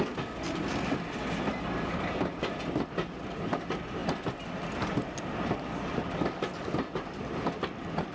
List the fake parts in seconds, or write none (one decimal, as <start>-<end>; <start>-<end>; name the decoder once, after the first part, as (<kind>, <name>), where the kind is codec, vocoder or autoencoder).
none